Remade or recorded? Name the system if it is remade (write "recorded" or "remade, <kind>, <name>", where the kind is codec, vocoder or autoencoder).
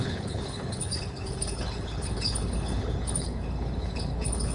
remade, codec, HILCodec